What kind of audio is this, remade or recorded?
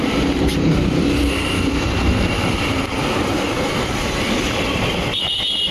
recorded